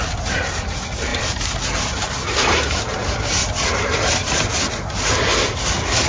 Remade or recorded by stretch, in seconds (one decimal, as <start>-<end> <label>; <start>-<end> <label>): 0.0-6.1 recorded